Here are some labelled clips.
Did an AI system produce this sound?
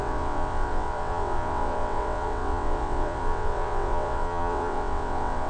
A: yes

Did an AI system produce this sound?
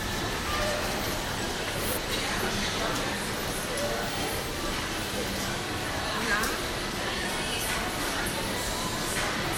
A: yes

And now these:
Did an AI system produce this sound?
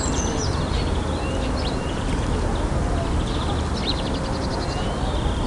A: no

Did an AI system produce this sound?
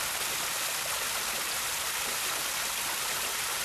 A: no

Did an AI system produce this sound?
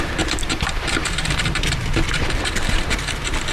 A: yes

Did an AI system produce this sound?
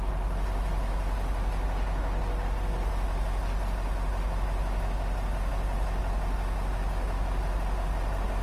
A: no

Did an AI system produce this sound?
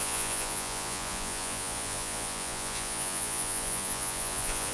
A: yes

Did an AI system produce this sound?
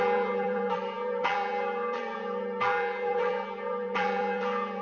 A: yes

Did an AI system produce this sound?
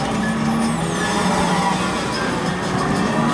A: no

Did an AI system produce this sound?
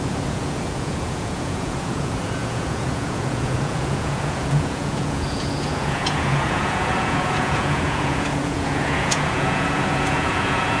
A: yes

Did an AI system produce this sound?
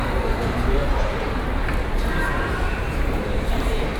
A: yes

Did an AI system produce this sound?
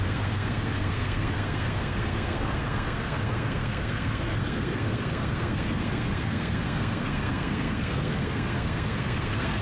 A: yes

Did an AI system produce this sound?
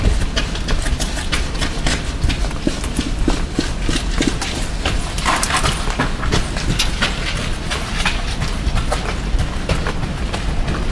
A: no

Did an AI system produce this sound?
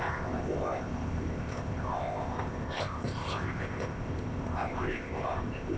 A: yes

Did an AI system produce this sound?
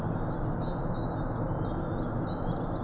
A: no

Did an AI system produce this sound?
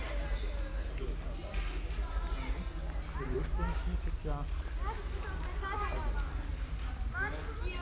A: no